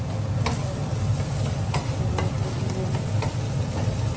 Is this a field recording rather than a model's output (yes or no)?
yes